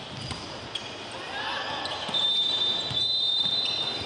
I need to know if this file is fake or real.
real